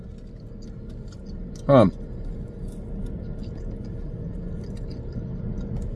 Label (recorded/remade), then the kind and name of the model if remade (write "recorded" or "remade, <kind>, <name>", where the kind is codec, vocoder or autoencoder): recorded